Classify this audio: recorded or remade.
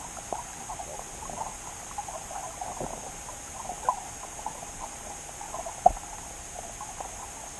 recorded